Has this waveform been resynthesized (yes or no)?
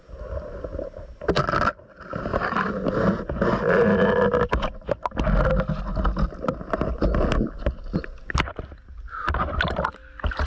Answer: no